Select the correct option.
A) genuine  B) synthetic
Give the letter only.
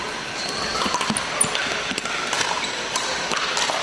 A